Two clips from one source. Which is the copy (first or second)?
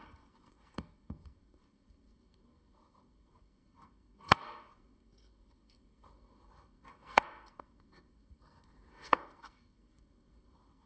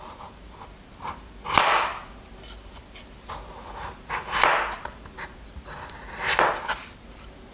first